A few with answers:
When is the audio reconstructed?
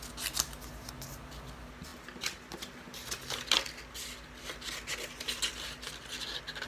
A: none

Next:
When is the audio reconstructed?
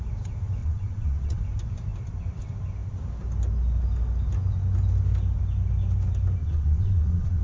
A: 0.6-1.4 (vocoder, WaveNeXt); 6.4-7.4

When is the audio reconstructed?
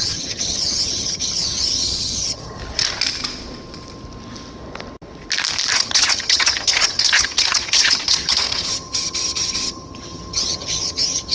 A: 0.0-2.6 (vocoder, HiFi-GAN); 5.7-11.3